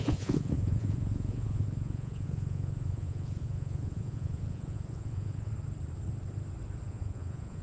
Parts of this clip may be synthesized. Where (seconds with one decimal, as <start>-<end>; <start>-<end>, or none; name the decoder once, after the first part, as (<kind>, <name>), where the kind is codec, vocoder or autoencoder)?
0.0-5.5 (vocoder, Vocos); 6.9-7.6